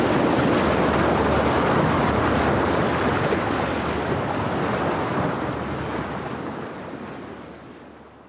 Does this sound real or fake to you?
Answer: real